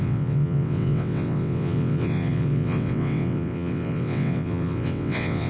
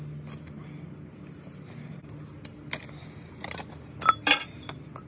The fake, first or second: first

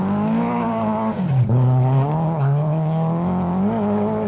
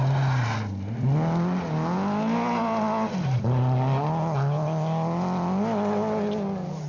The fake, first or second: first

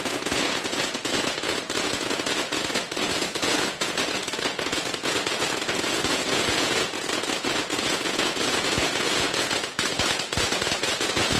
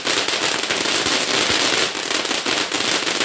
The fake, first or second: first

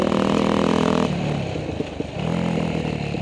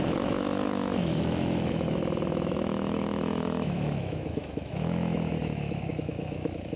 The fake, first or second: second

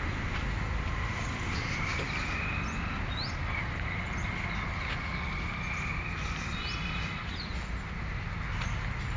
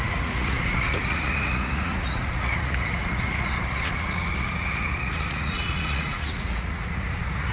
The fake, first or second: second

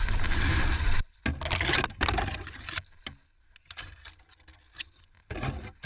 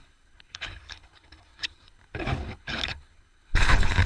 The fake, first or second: second